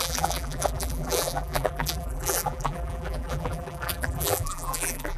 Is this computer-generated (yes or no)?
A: yes